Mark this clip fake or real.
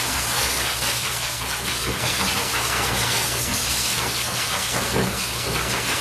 fake